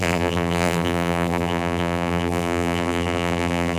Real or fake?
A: fake